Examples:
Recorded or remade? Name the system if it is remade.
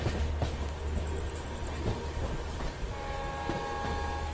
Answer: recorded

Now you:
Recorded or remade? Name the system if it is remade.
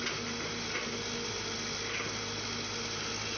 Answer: recorded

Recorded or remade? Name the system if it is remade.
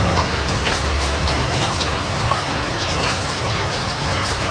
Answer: remade, codec, SNAC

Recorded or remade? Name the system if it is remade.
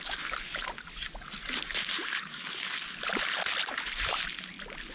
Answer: recorded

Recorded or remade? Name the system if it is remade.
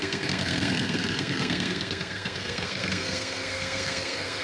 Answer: remade, codec, SNAC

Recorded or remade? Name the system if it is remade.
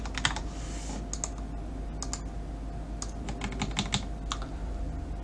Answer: recorded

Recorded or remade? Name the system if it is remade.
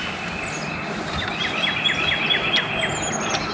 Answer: recorded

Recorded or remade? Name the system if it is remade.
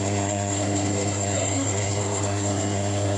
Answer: remade, codec, SNAC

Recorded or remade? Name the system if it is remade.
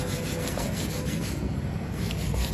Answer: remade, codec, SNAC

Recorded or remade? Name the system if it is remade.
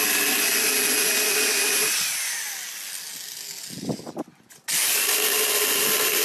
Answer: recorded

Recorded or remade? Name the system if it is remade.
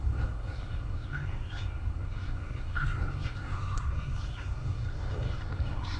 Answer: remade, codec, SNAC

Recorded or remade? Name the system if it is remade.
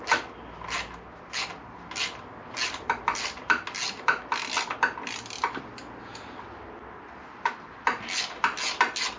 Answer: recorded